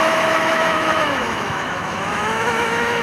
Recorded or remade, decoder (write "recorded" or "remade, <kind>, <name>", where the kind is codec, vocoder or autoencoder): remade, autoencoder, DAC-VAE